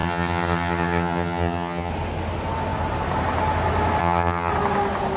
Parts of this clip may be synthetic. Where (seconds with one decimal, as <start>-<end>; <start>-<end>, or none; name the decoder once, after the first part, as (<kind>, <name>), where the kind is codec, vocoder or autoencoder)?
0.0-1.9 (vocoder, HiFi-GAN); 4.0-4.5